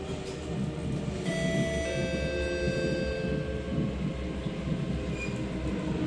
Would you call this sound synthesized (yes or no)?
no